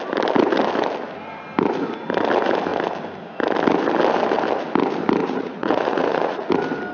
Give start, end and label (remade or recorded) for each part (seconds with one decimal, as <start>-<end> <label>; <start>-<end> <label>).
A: 0.0-5.2 recorded; 5.2-6.5 remade; 6.5-6.9 recorded